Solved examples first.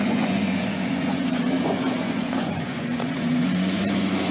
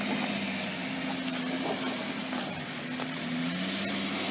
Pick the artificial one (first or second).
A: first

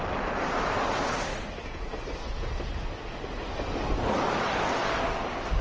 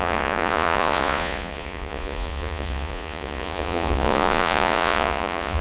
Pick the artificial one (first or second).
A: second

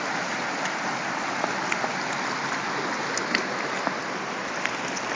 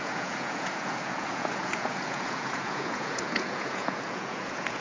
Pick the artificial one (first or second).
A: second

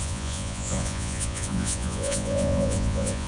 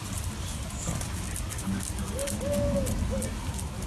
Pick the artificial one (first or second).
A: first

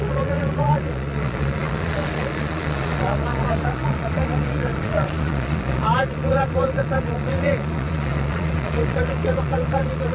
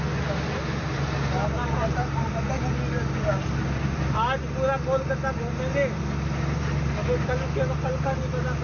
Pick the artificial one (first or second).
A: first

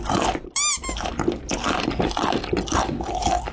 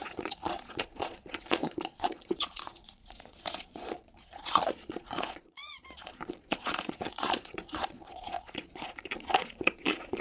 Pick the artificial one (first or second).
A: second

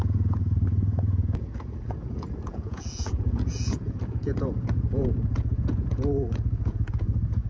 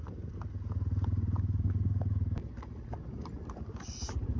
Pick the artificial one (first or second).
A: first